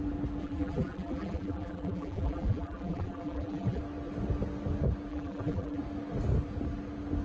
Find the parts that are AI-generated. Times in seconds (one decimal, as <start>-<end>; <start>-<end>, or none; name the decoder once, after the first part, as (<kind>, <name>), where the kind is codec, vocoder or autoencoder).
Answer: 0.4-3.8 (vocoder, BigVGAN v2); 5.1-5.8